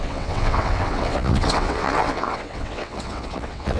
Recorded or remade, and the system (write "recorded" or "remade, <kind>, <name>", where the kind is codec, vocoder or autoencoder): remade, vocoder, WaveNeXt